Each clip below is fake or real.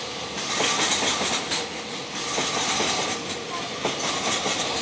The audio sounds real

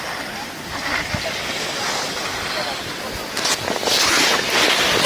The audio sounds real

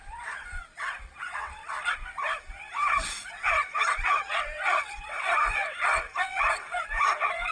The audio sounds fake